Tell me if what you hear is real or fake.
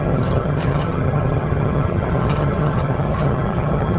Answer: fake